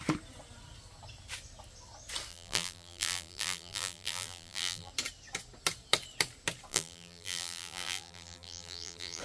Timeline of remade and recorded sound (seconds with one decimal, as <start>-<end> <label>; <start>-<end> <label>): 0.0-2.3 recorded; 2.3-4.9 remade; 4.9-6.7 recorded; 6.7-9.2 remade